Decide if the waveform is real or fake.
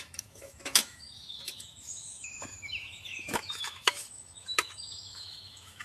fake